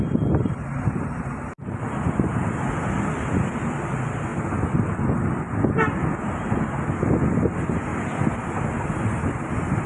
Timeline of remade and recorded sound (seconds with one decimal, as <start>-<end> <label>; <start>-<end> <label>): 0.0-9.9 recorded